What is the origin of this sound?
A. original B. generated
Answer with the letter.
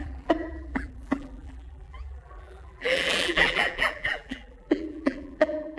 B